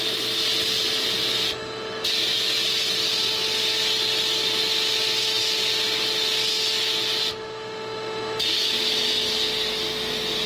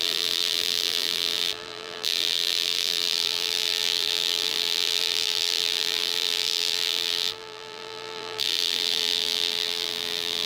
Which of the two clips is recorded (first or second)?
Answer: first